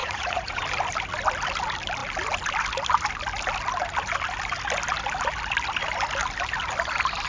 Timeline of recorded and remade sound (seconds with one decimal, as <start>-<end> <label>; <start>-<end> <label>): 0.0-0.6 remade; 0.6-7.3 recorded